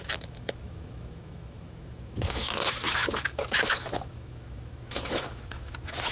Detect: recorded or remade remade